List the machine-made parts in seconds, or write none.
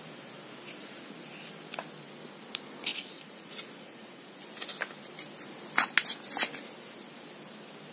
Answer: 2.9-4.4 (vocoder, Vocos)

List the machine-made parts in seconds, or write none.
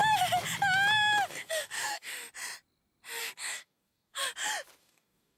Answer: 1.3-2.1 (codec, DAC); 3.2-4.2; 4.8-5.4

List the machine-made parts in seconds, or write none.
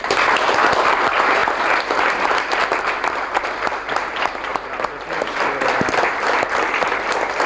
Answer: 0.0-4.5 (vocoder, BigVGAN v2); 5.2-7.5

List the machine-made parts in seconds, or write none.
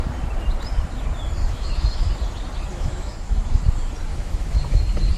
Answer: 1.4-2.1 (autoencoder, DAC-VAE); 2.7-3.6; 4.1-4.8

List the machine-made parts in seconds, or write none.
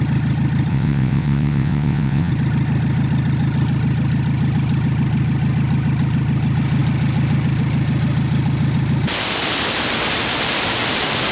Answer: 0.7-2.3 (vocoder, WaveNeXt)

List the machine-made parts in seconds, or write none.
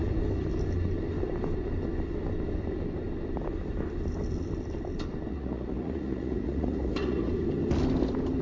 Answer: 5.3-7.3 (vocoder, Vocos)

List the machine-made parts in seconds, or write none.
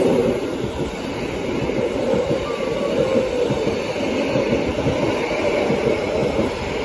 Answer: none